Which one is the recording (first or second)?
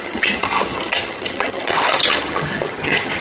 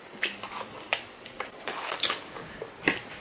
second